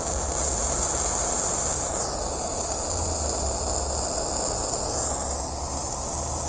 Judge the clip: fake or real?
real